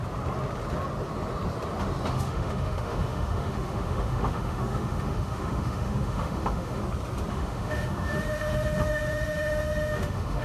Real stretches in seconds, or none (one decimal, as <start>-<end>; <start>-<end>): 0.0-2.1; 6.8-7.3

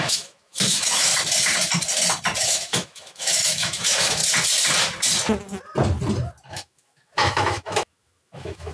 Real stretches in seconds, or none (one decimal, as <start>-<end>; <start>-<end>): 1.1-2.4; 4.2-6.5

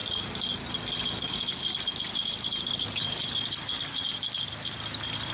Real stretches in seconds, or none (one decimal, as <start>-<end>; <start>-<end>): 0.0-5.3

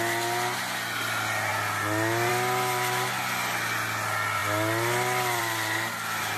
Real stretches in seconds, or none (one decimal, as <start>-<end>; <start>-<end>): 0.0-6.4

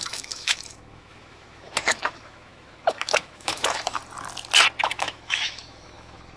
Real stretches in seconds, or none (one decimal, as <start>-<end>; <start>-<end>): 4.0-4.8

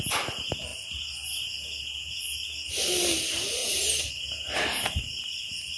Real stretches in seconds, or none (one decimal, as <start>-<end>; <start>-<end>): 0.0-5.8

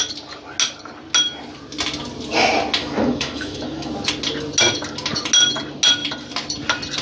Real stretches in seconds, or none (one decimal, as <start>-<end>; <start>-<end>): 0.0-2.8; 3.9-7.0